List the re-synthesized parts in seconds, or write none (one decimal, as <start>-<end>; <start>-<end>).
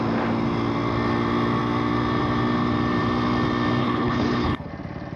3.8-4.7